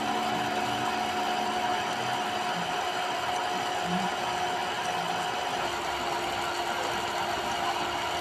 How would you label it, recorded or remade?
recorded